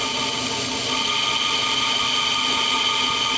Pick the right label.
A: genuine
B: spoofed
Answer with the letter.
A